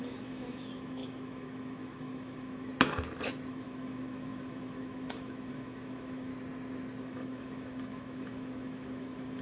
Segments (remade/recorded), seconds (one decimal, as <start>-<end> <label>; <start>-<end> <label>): 0.0-2.7 remade; 2.7-3.5 recorded; 3.5-6.3 remade; 6.3-7.0 recorded; 7.0-9.4 remade